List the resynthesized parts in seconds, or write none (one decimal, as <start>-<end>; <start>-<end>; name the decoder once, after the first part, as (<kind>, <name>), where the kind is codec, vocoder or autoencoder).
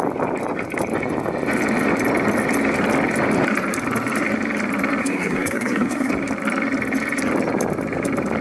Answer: 5.0-6.1 (codec, SNAC)